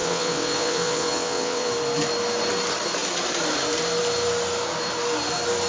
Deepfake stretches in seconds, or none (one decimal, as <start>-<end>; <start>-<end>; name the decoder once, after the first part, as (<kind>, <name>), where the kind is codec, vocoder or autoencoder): 0.0-1.7 (vocoder, WaveNeXt)